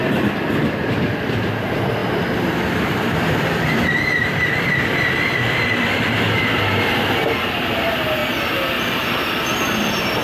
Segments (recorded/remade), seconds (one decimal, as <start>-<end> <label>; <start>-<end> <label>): 0.0-8.2 remade; 8.2-8.8 recorded; 8.8-10.2 remade